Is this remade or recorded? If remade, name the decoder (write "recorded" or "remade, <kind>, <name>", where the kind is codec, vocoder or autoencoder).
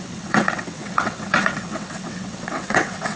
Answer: remade, vocoder, WaveNeXt